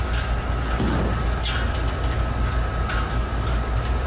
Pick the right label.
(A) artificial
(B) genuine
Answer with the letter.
B